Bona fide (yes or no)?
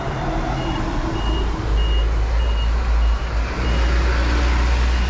yes